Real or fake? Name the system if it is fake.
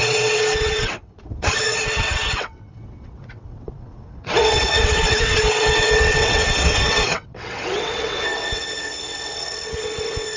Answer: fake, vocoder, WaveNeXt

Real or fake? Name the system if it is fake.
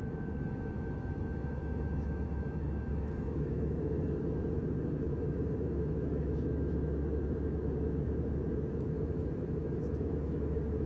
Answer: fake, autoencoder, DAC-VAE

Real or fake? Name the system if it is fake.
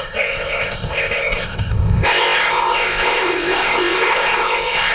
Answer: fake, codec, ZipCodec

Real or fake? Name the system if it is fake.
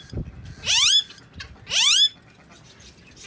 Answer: real